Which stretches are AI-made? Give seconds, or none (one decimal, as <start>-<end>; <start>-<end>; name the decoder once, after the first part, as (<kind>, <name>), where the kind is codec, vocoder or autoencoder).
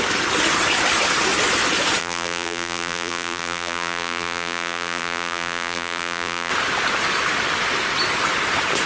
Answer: 2.0-6.5 (vocoder, BigVGAN v2)